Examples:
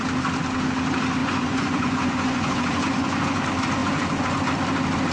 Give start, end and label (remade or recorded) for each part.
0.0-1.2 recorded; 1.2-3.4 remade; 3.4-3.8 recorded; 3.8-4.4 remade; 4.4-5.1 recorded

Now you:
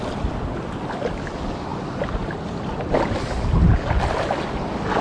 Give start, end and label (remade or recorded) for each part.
0.0-5.0 recorded

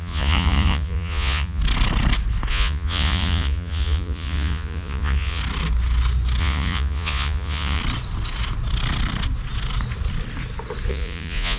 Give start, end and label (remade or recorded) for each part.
0.0-1.6 remade; 1.6-2.5 recorded; 2.5-5.4 remade; 5.4-6.4 recorded; 6.4-7.8 remade; 7.8-10.9 recorded; 10.9-11.6 remade

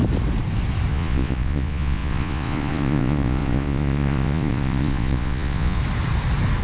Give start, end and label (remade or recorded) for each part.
0.0-0.9 recorded; 0.9-5.8 remade; 5.8-6.6 recorded

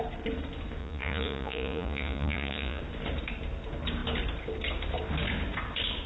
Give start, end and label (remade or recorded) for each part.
0.0-0.8 recorded; 0.8-2.8 remade; 2.8-6.1 recorded

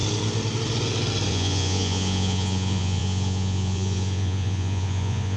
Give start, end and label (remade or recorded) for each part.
0.0-1.3 recorded; 1.3-5.4 remade